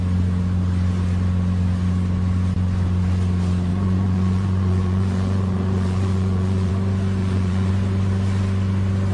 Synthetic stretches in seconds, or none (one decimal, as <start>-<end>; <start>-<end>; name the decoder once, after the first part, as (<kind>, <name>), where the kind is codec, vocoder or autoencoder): 3.7-6.7 (vocoder, Vocos); 7.2-7.7